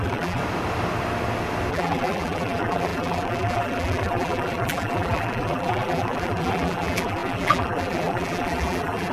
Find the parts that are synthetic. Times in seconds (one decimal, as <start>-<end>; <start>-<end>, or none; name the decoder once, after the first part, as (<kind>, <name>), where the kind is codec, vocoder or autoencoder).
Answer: 0.0-0.4 (vocoder, BigVGAN v2); 1.7-9.1